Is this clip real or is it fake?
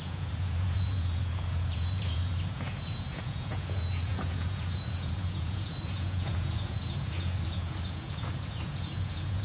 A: fake